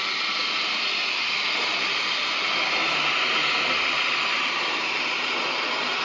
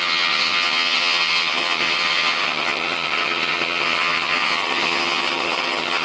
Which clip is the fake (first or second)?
second